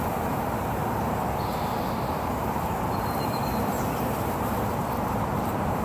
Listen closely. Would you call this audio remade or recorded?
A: remade